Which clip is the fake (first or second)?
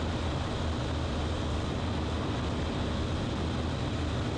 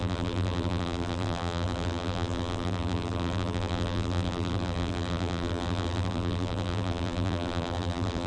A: second